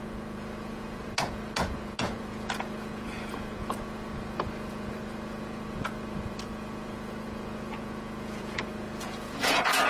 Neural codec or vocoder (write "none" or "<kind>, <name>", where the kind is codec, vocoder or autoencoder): vocoder, Vocos